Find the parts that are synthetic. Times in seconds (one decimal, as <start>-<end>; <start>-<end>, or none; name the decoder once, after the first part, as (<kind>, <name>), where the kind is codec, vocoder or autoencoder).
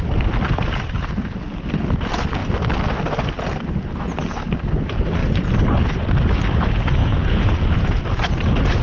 7.0-8.0 (vocoder, Vocos)